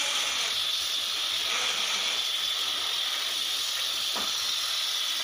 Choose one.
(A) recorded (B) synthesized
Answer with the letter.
A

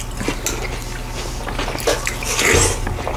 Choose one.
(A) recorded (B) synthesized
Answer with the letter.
A